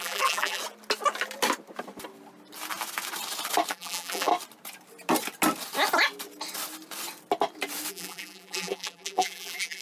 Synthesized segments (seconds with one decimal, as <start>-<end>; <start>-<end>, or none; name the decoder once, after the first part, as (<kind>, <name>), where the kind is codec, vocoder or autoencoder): 0.0-0.6 (vocoder, BigVGAN v2); 3.7-4.3; 7.9-9.8